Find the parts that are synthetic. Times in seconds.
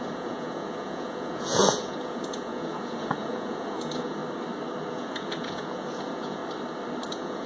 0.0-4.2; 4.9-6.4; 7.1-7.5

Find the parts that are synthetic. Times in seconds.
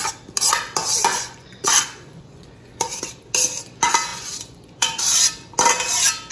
1.1-3.1; 4.1-5.0